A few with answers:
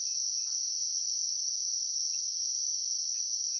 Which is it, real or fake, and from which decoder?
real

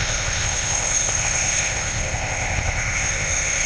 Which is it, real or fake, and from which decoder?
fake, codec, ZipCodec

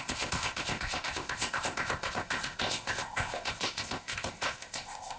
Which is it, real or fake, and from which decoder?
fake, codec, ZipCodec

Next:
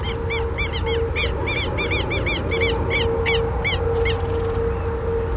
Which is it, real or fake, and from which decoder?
real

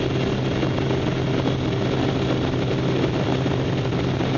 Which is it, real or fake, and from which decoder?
real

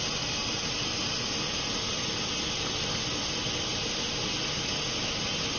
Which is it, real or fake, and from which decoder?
real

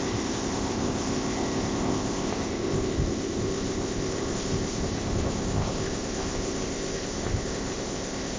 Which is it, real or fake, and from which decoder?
fake, codec, ZipCodec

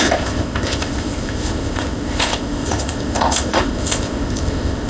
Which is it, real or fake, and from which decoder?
fake, codec, ZipCodec